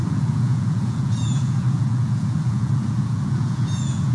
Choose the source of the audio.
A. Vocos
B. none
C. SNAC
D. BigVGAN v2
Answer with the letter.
A